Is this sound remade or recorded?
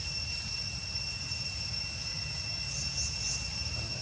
recorded